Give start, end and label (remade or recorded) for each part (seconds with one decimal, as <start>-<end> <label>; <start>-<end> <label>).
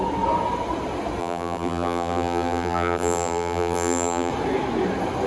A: 0.0-1.2 recorded; 1.2-4.3 remade; 4.3-5.3 recorded